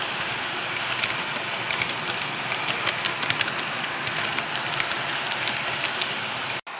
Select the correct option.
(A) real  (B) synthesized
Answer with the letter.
A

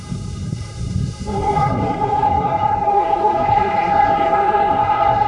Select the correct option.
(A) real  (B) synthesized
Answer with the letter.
B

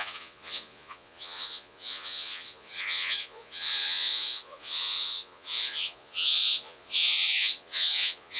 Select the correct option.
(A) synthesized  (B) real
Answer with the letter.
A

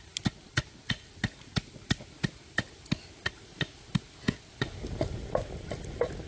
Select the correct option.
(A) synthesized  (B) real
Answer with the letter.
B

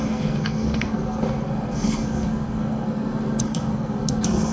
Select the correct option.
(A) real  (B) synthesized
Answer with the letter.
B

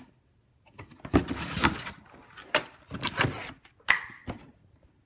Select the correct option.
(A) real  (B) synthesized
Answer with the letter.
A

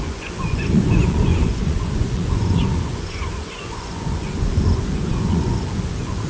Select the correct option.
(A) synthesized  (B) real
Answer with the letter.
A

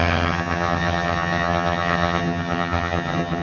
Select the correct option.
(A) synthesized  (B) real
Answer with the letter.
A